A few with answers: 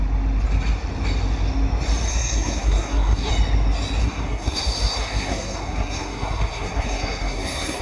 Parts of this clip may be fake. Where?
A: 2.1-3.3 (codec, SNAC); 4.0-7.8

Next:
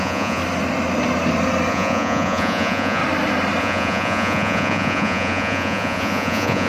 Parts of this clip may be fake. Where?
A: 0.0-0.4 (vocoder, Vocos); 1.7-3.0; 3.6-6.7

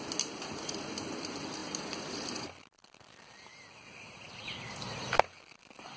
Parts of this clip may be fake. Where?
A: none

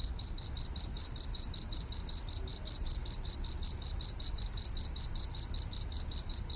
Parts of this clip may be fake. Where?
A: 2.5-3.5 (vocoder, BigVGAN v2)